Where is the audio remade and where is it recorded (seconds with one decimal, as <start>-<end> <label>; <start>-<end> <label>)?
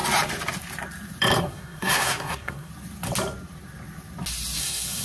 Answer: 0.0-1.4 recorded; 1.4-2.7 remade; 2.7-4.6 recorded; 4.6-5.0 remade